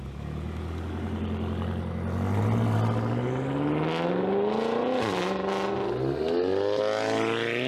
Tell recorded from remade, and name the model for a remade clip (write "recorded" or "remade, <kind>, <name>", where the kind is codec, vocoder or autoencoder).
recorded